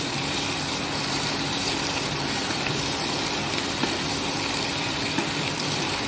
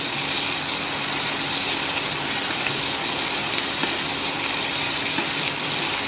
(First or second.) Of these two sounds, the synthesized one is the first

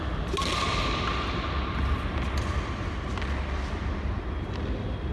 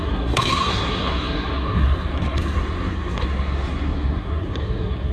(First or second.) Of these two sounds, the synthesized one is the second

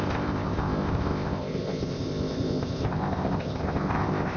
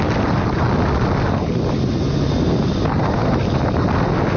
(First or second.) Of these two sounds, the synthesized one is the first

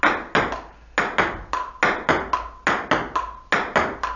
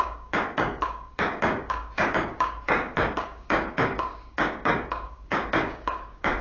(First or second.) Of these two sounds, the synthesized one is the second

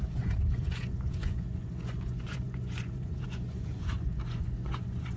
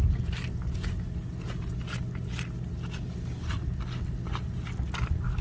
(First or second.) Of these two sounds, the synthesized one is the first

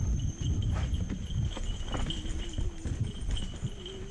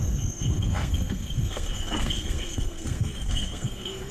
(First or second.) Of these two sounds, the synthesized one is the second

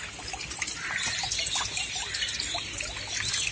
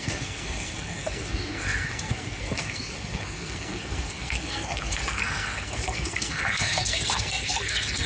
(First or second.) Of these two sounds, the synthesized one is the second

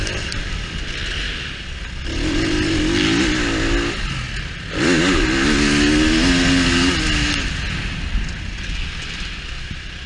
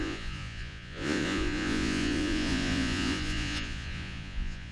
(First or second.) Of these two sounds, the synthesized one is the second